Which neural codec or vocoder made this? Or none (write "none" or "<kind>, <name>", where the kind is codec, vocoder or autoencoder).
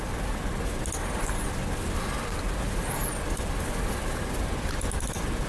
none